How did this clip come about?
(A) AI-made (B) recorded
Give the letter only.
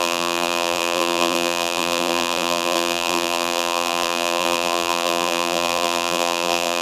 A